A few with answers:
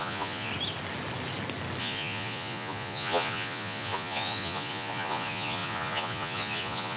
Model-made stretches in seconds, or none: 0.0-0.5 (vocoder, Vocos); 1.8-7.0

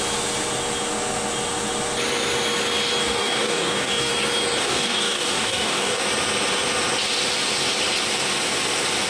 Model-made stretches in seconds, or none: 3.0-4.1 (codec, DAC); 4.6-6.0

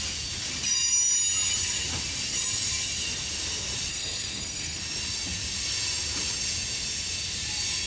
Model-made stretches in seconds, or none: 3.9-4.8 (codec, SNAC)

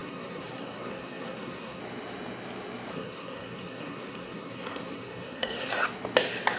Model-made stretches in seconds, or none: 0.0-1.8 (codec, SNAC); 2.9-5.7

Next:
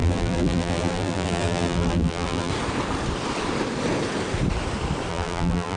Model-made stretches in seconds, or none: 0.0-2.5 (vocoder, BigVGAN v2); 5.1-5.8

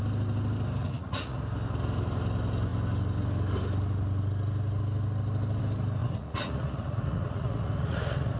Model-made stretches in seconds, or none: 0.8-1.4 (vocoder, Vocos); 6.0-8.4

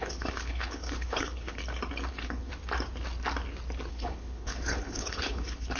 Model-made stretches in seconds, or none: 0.0-1.6 (codec, HILCodec); 2.1-2.5; 3.9-5.8

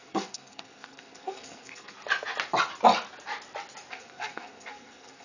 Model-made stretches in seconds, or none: 0.0-2.0 (codec, SNAC); 3.9-5.2